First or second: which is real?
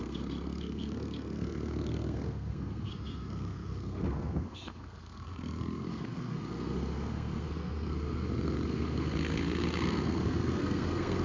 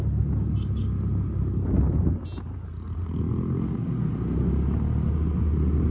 second